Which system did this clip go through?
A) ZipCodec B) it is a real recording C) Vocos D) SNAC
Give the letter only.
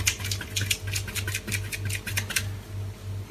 B